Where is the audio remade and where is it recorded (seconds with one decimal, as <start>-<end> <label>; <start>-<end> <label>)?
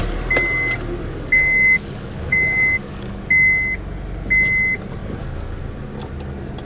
0.0-1.0 recorded; 1.0-3.2 remade; 3.2-5.0 recorded; 5.0-5.6 remade; 5.6-6.6 recorded